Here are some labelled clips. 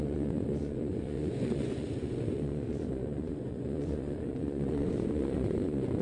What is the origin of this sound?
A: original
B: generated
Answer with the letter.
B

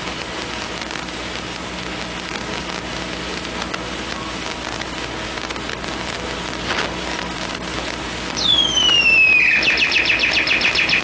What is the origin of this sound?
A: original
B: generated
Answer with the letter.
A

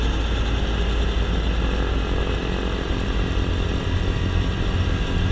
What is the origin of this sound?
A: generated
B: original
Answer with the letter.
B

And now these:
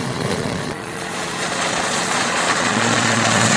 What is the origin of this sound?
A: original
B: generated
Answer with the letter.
B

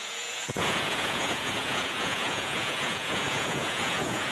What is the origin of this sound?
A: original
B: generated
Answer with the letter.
B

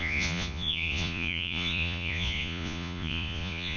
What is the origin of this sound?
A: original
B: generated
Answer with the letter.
B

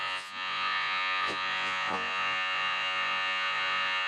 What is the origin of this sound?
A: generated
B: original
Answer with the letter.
A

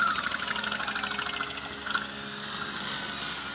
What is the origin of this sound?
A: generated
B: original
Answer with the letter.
B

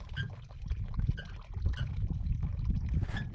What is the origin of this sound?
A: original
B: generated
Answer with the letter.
A